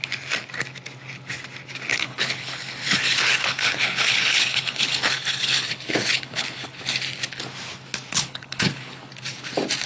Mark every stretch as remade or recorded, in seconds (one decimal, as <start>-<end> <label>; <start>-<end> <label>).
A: 0.0-1.9 recorded; 1.9-7.0 remade; 7.0-8.1 recorded; 8.1-9.1 remade; 9.1-9.9 recorded